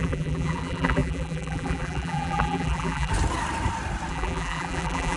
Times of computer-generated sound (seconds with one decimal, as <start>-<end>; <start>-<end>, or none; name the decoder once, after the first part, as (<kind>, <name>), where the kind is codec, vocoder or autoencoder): 0.0-3.1 (vocoder, BigVGAN v2); 4.1-5.2